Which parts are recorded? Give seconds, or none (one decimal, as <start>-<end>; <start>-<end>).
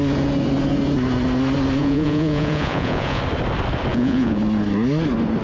0.0-1.8; 3.2-3.9; 4.4-5.4